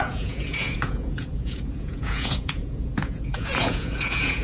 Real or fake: fake